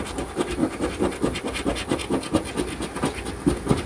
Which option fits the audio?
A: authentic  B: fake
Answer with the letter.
A